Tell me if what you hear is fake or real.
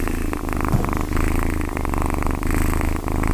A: real